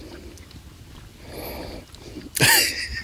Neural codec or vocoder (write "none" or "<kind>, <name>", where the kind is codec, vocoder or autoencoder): none